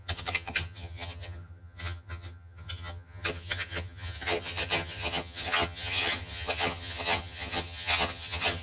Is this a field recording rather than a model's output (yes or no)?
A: no